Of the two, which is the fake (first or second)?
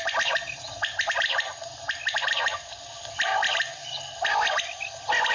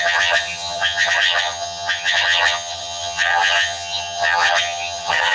second